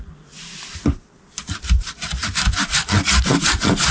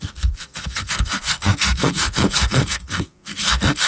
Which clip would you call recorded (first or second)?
first